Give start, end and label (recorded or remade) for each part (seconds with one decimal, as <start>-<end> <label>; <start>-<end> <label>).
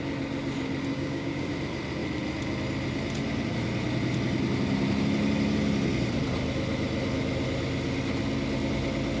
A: 0.0-0.9 recorded; 0.9-1.5 remade; 1.5-9.2 recorded